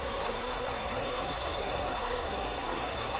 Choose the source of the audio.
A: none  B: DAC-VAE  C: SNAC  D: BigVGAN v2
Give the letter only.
C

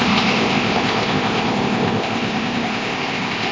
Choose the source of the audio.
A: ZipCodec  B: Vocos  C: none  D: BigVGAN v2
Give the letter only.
A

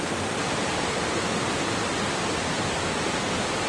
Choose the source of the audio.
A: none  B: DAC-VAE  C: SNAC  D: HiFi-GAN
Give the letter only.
A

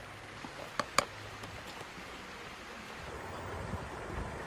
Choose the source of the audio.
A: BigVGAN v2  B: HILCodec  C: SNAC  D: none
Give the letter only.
D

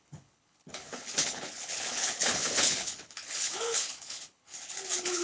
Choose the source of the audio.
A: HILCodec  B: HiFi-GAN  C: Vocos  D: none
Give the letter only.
A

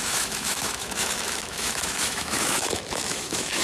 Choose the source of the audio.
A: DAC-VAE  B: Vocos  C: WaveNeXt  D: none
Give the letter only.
A